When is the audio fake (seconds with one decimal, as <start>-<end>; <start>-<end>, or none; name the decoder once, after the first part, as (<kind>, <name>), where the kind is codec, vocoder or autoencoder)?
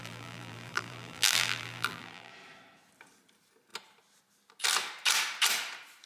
0.0-2.3 (vocoder, BigVGAN v2)